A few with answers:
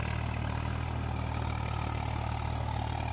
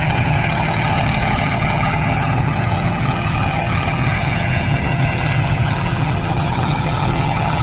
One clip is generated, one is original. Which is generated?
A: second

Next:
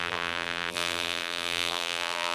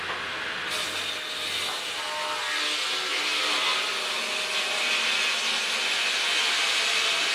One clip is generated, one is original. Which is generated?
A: first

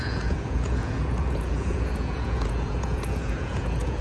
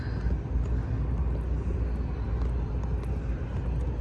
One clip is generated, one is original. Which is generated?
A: first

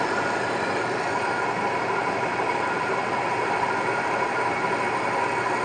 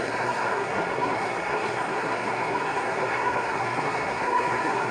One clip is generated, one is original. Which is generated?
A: second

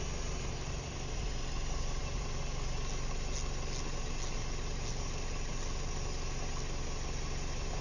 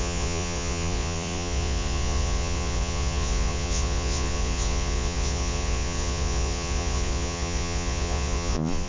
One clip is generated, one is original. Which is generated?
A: second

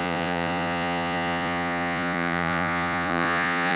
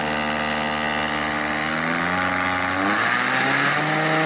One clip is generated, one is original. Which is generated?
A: first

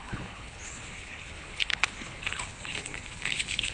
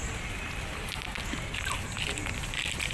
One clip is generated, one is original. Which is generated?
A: first